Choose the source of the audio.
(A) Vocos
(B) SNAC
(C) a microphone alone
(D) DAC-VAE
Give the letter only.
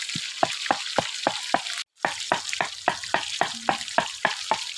C